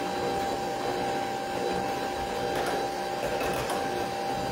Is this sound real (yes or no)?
yes